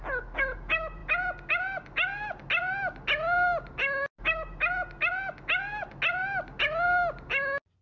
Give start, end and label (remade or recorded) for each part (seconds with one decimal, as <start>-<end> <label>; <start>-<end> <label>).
0.0-7.8 recorded